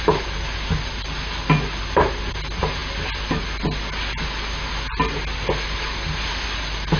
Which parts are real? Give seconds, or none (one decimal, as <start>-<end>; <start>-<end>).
0.0-7.0